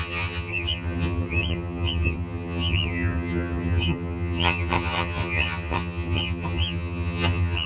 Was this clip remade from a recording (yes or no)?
yes